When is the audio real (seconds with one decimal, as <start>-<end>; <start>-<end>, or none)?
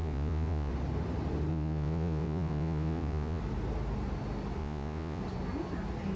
0.7-1.5; 3.4-4.6; 5.2-6.2